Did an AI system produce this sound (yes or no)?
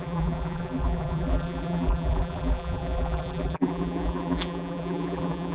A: yes